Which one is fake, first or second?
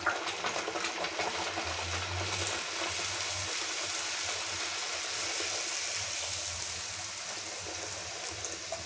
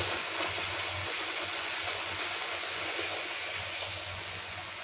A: second